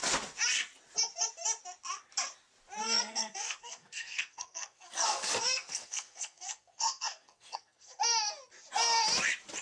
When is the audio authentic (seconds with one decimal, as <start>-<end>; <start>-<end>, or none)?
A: 0.0-2.8; 8.0-9.6